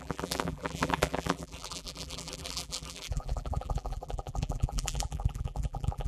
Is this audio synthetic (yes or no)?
yes